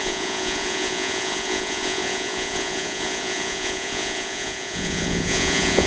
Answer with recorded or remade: remade